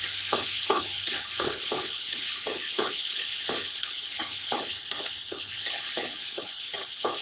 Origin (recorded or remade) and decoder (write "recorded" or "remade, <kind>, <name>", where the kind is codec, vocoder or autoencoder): remade, codec, HILCodec